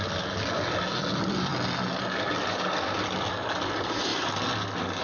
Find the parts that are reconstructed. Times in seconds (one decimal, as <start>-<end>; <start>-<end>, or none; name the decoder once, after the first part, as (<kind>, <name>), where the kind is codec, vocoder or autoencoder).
none